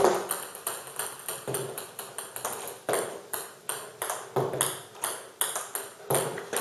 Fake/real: real